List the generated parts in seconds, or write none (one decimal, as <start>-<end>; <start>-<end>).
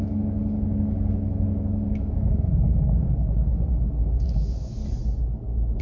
0.0-4.8